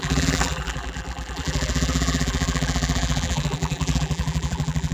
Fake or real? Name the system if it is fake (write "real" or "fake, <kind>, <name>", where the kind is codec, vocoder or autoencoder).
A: fake, vocoder, BigVGAN v2